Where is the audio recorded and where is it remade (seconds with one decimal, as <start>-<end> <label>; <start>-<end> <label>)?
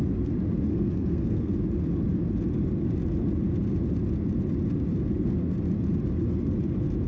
0.0-0.7 recorded; 0.7-1.5 remade; 1.5-7.1 recorded